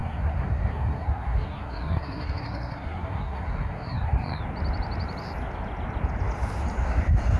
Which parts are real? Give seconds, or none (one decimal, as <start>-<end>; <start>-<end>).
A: 4.4-7.4